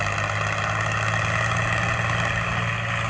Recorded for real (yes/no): yes